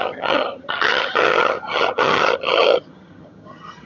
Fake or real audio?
fake